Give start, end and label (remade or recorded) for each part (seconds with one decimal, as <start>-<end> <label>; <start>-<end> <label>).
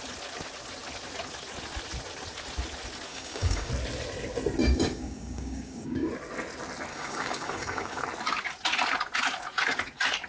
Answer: 0.0-3.1 recorded; 3.1-3.7 remade; 3.7-4.6 recorded; 4.6-6.1 remade; 6.1-6.9 recorded; 6.9-8.0 remade; 8.0-10.3 recorded